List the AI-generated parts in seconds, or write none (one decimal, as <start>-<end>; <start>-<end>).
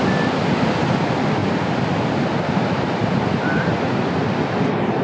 none